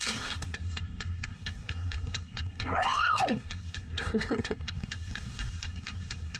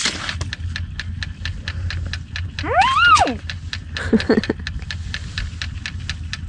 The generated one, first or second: first